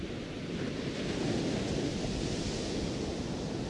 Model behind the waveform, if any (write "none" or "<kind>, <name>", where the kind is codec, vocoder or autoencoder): none